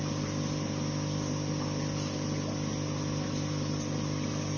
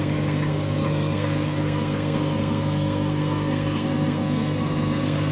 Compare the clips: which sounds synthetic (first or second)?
second